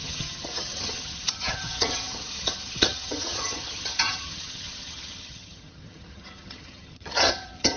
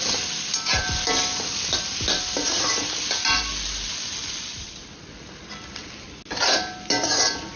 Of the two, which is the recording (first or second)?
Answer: second